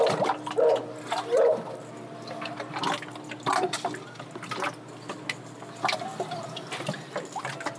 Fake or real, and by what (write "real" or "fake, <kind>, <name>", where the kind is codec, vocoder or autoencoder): real